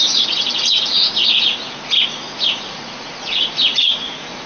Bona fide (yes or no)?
no